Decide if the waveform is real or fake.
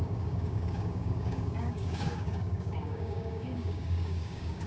fake